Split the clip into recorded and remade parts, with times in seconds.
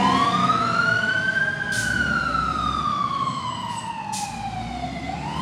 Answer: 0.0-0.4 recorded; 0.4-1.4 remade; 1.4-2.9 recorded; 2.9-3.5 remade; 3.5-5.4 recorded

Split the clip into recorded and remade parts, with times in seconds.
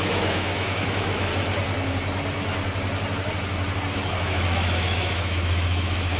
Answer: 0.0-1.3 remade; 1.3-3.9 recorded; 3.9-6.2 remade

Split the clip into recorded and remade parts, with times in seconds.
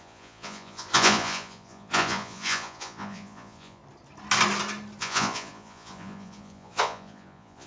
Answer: 0.0-3.8 remade; 3.8-5.0 recorded; 5.0-7.7 remade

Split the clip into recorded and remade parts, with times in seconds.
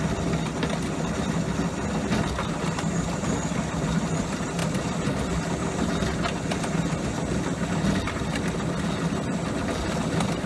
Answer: 0.0-10.5 recorded